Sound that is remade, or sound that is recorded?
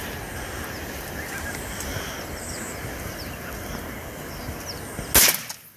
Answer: recorded